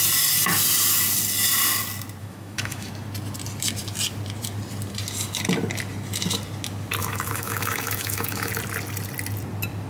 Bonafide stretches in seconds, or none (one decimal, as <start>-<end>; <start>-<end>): 0.0-2.2; 2.9-7.0; 8.5-9.9